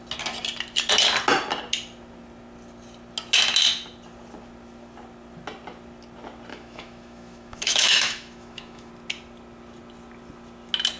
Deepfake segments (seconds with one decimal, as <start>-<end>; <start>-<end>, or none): 6.5-8.9